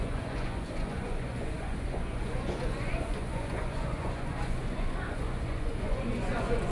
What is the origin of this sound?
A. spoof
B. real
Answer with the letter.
A